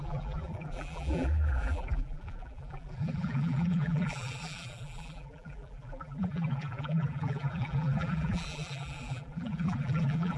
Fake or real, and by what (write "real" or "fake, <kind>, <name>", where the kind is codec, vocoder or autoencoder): fake, vocoder, BigVGAN v2